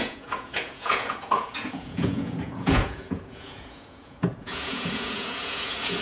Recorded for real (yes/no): no